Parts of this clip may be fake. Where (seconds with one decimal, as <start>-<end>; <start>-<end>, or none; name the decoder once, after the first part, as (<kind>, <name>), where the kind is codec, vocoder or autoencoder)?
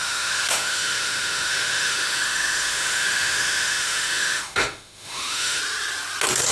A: 0.0-5.6 (autoencoder, DAC-VAE)